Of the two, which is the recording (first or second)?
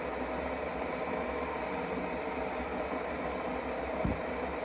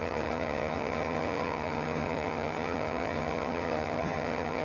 first